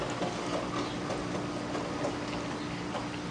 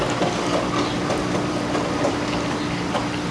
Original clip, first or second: first